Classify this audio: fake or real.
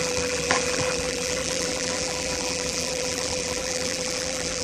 fake